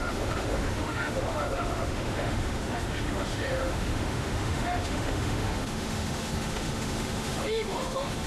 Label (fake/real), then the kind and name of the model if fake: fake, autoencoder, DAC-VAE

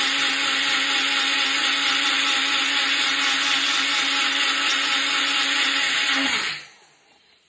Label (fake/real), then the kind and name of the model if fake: real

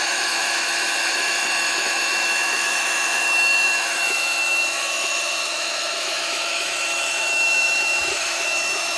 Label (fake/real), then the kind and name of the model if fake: fake, autoencoder, DAC-VAE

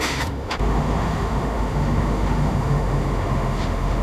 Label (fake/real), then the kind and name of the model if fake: fake, autoencoder, DAC-VAE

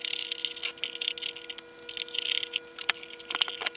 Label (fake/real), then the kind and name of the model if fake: real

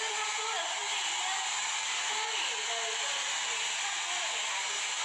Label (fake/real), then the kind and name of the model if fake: real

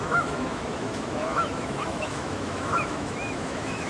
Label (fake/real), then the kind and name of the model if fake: fake, autoencoder, DAC-VAE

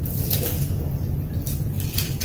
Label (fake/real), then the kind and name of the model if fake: real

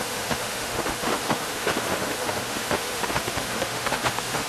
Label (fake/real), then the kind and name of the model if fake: fake, autoencoder, DAC-VAE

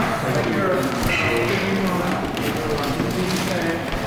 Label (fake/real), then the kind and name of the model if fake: real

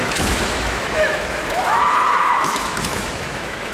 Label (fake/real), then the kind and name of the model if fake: fake, autoencoder, DAC-VAE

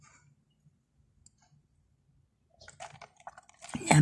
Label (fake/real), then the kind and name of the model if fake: real